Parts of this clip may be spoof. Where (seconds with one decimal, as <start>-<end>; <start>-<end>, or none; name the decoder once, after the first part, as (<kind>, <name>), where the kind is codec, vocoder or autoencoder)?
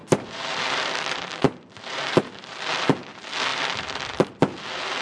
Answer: 0.0-2.8 (vocoder, BigVGAN v2); 3.5-4.4